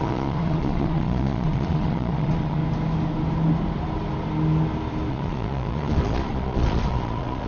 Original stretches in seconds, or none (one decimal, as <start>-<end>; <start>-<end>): 2.6-5.1